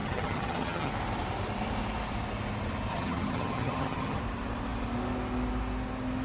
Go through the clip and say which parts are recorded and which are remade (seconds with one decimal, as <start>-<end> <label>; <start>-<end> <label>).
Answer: 0.0-0.9 remade; 0.9-2.9 recorded; 2.9-4.2 remade; 4.2-6.2 recorded